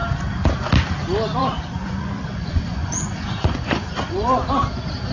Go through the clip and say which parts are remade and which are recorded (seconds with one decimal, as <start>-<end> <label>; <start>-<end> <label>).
0.0-1.4 recorded; 1.4-4.5 remade; 4.5-5.1 recorded